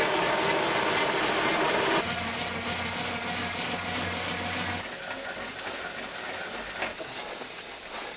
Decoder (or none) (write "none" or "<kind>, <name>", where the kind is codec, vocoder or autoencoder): none